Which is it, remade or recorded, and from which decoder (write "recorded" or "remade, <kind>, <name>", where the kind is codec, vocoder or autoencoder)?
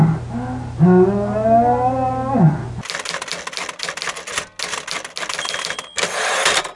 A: recorded